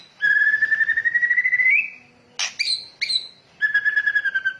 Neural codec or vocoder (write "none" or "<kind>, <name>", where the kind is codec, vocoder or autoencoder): none